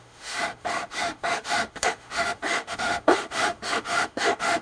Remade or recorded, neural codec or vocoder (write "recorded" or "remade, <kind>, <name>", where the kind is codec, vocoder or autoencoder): remade, autoencoder, DAC-VAE